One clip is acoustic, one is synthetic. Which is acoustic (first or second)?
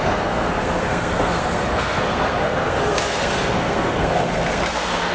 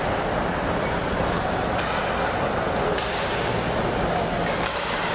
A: second